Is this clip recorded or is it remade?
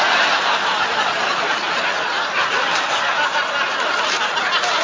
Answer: recorded